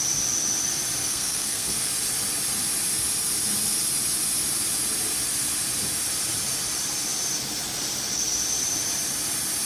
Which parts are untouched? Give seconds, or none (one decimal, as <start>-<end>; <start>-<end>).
0.0-1.0; 1.9-9.7